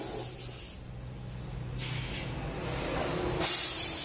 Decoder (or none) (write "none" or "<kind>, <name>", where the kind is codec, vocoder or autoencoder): none